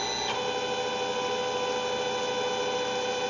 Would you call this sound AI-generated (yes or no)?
no